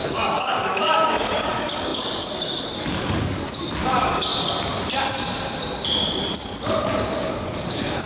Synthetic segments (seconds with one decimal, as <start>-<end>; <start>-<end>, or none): 0.0-4.3; 7.0-8.1

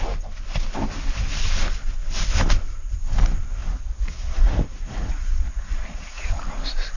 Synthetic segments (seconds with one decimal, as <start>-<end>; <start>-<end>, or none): 3.6-6.3

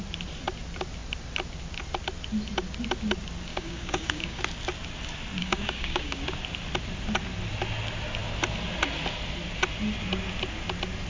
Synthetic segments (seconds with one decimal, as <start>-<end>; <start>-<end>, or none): 3.5-4.4; 5.4-6.2